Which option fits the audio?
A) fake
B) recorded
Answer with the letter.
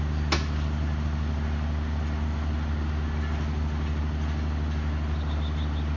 B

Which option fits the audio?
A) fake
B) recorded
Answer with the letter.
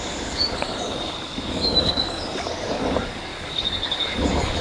A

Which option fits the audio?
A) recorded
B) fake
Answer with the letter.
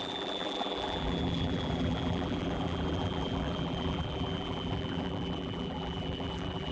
B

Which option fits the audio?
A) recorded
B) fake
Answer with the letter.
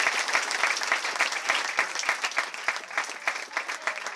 A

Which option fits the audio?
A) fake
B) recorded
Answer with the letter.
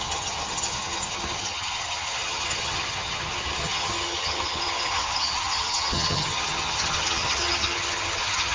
A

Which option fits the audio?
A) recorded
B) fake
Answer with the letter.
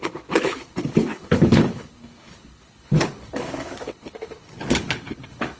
B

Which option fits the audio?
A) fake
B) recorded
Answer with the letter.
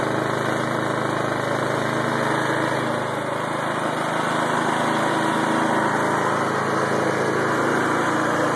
B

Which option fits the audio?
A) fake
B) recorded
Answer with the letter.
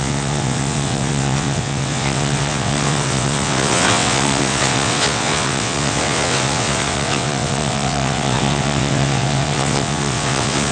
A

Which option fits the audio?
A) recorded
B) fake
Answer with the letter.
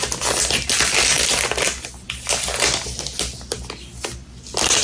A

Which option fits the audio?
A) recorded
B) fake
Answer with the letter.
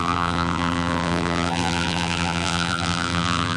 B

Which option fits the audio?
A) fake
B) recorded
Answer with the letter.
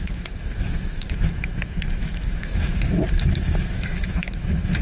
A